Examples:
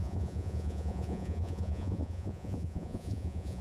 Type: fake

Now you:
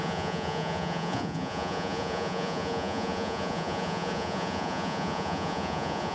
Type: fake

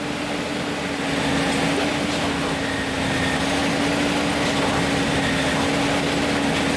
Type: real